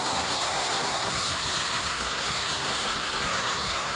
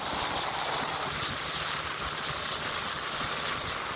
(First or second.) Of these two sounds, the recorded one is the second